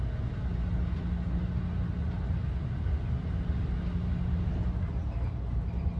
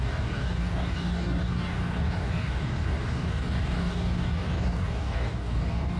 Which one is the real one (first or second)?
first